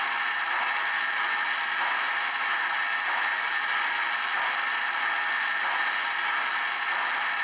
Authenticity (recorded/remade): recorded